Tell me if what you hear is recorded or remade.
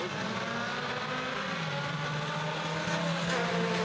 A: recorded